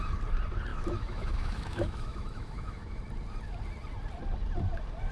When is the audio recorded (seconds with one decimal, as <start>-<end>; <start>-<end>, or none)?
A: 0.0-0.7; 3.0-5.1